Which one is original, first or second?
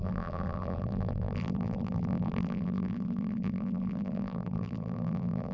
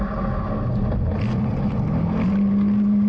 second